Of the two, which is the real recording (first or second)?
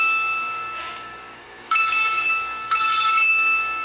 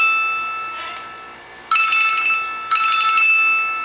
second